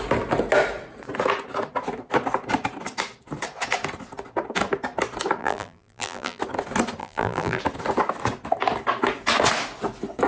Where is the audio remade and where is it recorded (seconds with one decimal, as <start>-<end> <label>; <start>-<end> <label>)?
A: 0.0-5.4 recorded; 5.4-6.4 remade; 6.4-7.0 recorded; 7.0-7.6 remade; 7.6-10.3 recorded